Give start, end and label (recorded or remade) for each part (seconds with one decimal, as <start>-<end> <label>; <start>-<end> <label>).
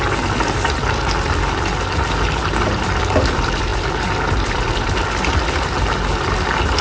0.0-6.8 recorded